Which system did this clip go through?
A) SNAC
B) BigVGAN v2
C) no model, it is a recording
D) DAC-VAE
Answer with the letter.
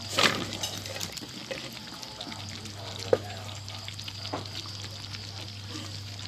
C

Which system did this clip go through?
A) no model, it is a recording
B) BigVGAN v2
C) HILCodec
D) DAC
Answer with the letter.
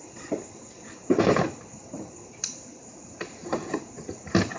A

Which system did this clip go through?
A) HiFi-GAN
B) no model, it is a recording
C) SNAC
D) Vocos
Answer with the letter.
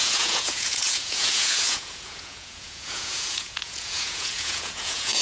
D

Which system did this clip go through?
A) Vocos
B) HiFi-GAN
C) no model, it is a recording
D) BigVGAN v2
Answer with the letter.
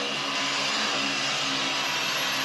C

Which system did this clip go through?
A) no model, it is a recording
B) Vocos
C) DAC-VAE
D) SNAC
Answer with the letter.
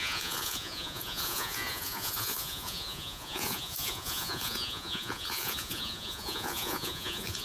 B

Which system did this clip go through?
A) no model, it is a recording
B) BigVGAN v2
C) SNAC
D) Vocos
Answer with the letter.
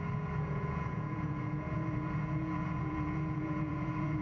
D